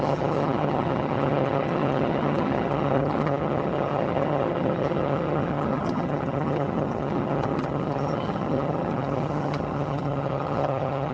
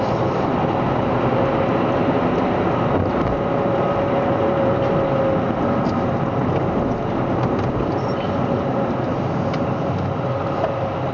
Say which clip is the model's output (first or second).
first